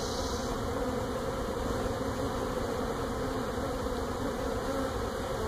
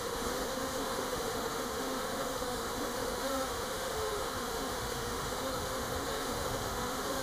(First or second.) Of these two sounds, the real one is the first